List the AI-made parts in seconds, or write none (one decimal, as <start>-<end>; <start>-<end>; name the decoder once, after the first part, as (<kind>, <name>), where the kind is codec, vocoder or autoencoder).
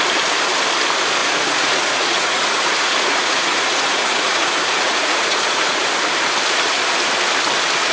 1.2-5.9 (vocoder, Vocos)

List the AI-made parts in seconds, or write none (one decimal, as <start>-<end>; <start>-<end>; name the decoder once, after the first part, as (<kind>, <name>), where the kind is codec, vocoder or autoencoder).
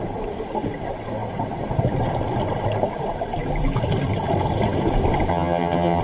5.3-6.0 (vocoder, HiFi-GAN)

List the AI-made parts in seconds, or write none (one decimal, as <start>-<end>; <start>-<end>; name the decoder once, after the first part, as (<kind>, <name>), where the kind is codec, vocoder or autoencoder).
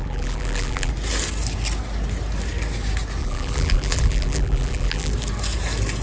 0.0-0.9 (vocoder, BigVGAN v2); 3.2-5.1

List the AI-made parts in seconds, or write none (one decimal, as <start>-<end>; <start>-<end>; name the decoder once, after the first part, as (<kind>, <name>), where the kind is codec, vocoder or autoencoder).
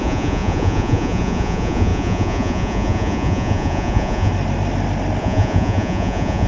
0.0-4.3 (vocoder, Vocos); 5.2-6.5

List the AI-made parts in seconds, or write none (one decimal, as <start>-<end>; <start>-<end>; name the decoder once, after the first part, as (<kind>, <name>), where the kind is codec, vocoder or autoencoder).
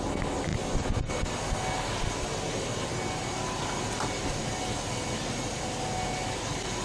none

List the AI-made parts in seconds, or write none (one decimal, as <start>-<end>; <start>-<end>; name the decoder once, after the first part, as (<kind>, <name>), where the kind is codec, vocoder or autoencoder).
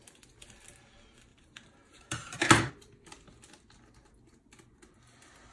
1.3-2.7 (vocoder, BigVGAN v2)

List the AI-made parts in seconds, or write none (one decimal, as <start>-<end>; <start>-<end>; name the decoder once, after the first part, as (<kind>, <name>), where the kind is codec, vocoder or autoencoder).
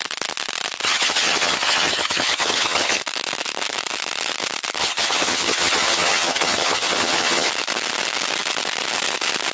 0.8-3.0 (vocoder, HiFi-GAN); 4.8-7.5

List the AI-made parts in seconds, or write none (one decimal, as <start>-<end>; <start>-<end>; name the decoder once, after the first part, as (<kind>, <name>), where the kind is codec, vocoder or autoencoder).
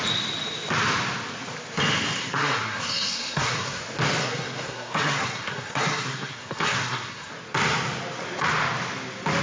2.2-3.8 (codec, SNAC); 4.2-7.3